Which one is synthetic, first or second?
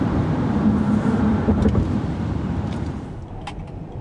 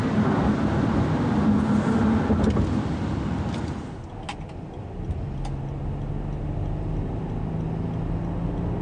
first